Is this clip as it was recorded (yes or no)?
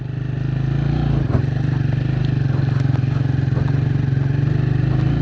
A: yes